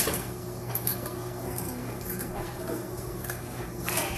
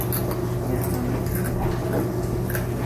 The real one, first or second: second